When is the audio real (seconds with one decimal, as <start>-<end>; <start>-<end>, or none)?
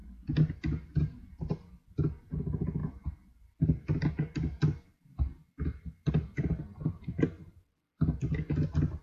0.0-1.0; 1.6-9.0